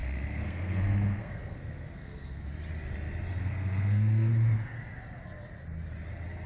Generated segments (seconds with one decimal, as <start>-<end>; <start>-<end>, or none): 0.0-2.5; 3.4-4.3